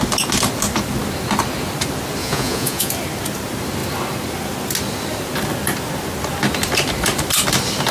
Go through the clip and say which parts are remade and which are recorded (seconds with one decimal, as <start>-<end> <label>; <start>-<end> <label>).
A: 0.0-2.2 recorded; 2.2-2.9 remade; 2.9-7.9 recorded